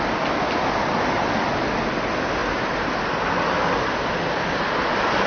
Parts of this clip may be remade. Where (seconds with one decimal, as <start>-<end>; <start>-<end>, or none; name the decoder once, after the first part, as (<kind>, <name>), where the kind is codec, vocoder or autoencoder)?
2.4-3.0 (vocoder, BigVGAN v2)